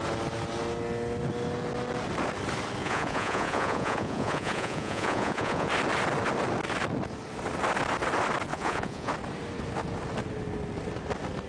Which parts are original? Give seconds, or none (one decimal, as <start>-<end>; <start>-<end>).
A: 0.0-2.8; 5.7-8.5; 9.1-11.5